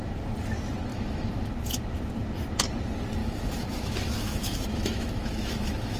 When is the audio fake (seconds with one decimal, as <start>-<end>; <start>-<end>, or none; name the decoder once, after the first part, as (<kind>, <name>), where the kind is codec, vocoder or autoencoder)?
0.9-1.5 (autoencoder, DAC-VAE); 3.2-6.0